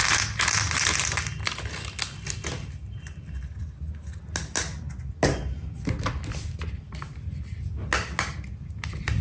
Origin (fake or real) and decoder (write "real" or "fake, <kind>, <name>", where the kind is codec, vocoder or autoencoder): real